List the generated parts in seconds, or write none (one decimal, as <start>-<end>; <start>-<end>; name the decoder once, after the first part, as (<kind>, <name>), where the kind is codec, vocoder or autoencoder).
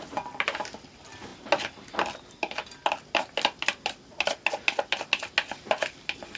none